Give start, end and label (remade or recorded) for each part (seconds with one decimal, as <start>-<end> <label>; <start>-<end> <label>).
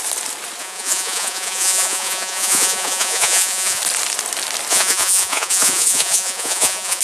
0.0-0.6 recorded; 0.6-3.8 remade; 3.8-4.7 recorded; 4.7-7.0 remade